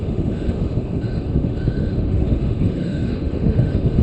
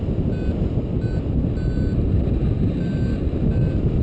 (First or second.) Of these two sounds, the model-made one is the first